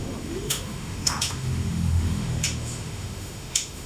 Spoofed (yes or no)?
yes